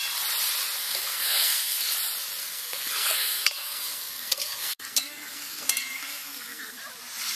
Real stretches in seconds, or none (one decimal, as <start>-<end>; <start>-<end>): 0.0-0.8; 1.9-2.4; 6.8-7.4